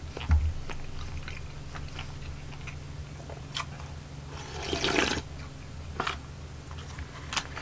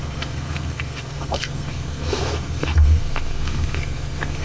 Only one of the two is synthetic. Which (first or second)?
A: second